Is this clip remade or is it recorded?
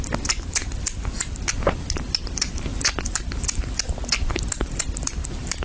recorded